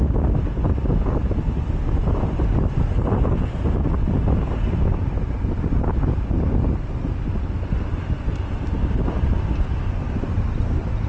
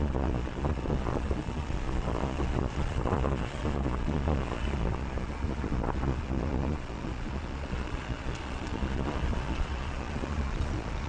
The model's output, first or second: second